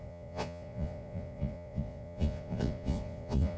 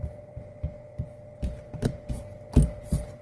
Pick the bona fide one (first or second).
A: second